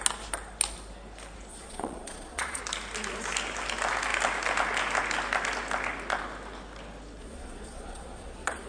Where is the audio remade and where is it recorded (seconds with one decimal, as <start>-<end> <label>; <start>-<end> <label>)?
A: 0.0-1.5 recorded; 1.5-2.6 remade; 2.6-7.2 recorded; 7.2-8.7 remade